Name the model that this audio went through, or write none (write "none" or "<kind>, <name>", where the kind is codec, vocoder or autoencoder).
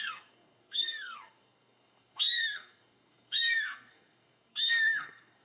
codec, SNAC